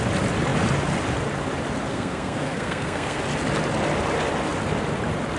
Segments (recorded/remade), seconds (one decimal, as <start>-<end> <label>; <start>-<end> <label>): 0.0-1.9 recorded; 1.9-3.2 remade; 3.2-5.4 recorded